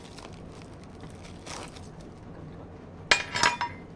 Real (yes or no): yes